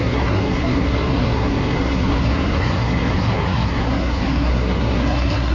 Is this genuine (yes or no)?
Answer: no